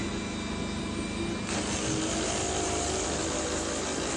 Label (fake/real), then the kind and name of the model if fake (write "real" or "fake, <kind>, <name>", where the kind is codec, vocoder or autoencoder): real